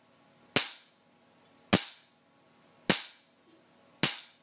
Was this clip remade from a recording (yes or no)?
no